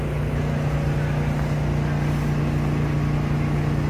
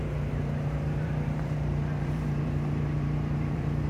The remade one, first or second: second